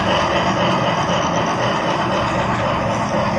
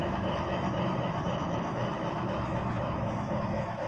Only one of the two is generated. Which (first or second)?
second